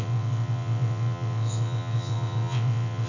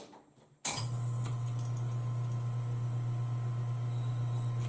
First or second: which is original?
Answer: second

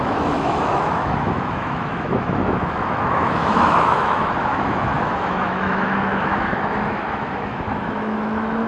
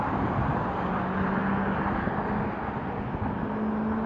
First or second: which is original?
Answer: second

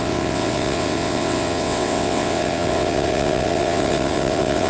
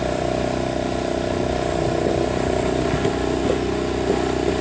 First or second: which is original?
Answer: second